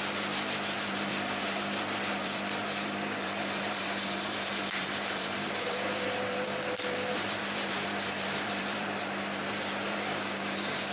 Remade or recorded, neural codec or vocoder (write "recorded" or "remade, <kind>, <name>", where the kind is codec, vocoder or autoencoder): remade, vocoder, BigVGAN v2